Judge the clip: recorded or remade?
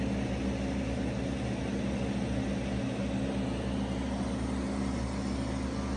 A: recorded